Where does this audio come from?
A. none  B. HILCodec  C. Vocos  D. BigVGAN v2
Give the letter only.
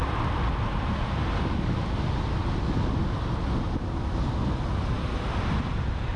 A